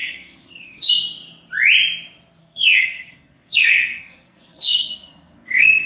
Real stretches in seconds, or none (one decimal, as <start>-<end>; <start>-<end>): 0.9-2.4